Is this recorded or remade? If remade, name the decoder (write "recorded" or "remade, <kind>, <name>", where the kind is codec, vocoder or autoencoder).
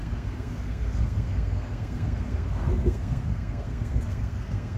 remade, codec, SNAC